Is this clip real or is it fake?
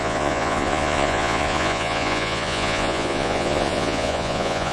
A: fake